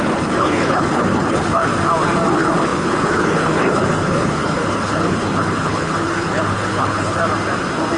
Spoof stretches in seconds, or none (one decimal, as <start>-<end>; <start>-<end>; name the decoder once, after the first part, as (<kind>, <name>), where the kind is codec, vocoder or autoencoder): 0.0-1.7 (codec, HILCodec); 2.3-7.2